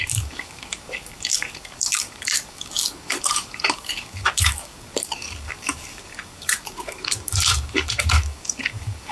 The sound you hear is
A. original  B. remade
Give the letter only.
B